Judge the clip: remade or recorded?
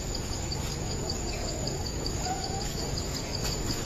remade